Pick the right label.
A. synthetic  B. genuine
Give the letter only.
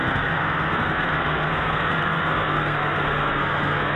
A